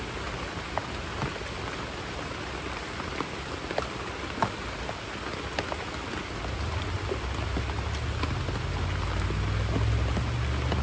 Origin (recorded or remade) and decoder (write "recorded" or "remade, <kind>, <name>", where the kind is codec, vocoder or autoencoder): recorded